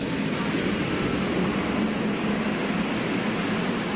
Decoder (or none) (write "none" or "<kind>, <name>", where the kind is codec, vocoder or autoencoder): none